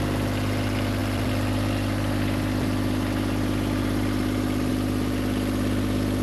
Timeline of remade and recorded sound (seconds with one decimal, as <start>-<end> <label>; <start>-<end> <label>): 0.0-6.2 recorded